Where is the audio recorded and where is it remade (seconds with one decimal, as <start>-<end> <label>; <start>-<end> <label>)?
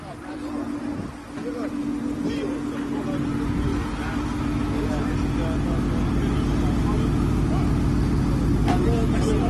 0.0-9.5 recorded